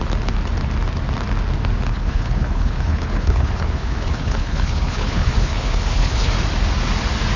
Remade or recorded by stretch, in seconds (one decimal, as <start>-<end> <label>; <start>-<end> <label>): 0.0-1.9 recorded; 1.9-6.3 remade; 6.3-7.4 recorded